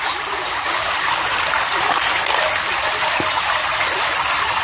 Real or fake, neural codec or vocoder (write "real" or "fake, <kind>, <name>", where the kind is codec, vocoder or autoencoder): real